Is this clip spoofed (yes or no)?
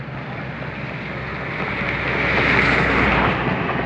no